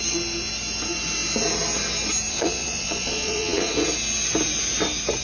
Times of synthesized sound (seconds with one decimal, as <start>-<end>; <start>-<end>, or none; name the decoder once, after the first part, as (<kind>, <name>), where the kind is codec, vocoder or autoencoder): 2.3-3.7 (vocoder, Vocos)